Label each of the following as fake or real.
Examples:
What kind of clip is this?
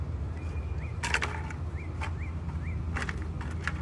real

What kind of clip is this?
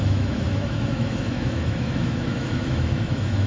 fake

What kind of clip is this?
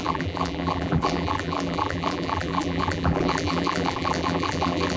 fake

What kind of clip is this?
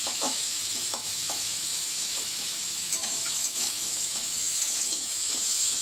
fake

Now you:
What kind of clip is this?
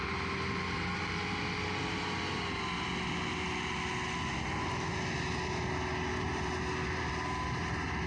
real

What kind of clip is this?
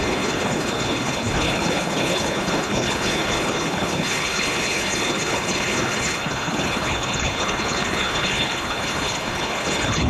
fake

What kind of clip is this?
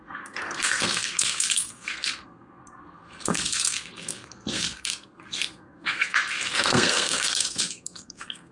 fake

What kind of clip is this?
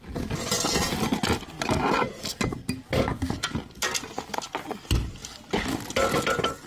real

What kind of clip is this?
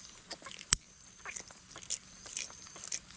fake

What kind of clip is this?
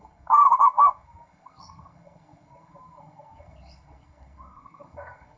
fake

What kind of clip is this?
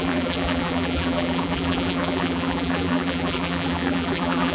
fake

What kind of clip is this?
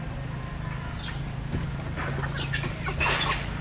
real